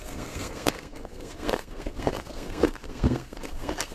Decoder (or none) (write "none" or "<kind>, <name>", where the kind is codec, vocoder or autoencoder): codec, SNAC